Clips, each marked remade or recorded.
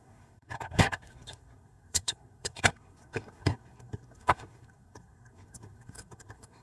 remade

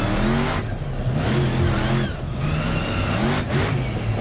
recorded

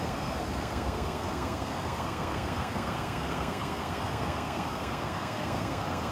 remade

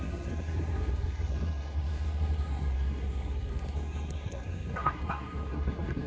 remade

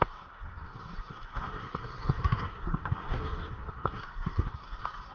remade